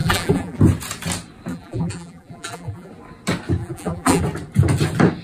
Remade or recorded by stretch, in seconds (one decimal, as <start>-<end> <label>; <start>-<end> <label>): 0.0-0.6 remade; 0.6-1.5 recorded; 1.5-2.9 remade; 2.9-3.6 recorded; 3.6-4.2 remade; 4.2-5.2 recorded